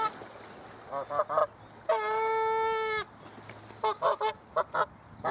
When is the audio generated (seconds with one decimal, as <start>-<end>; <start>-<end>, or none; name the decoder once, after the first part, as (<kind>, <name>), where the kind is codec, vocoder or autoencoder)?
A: none